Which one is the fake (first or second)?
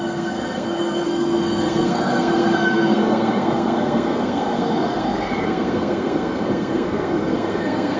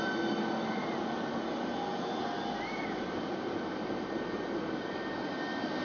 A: first